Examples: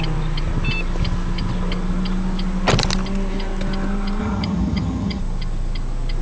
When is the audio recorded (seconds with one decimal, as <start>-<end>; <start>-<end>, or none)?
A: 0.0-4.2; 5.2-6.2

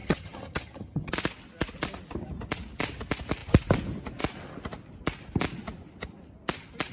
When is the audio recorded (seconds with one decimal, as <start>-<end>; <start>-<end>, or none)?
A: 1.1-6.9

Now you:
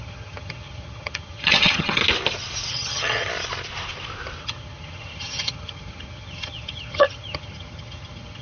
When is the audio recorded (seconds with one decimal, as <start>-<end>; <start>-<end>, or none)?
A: 2.0-2.7; 3.3-4.4